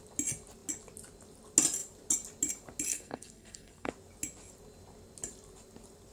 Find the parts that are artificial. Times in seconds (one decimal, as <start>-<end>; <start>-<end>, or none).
2.9-3.9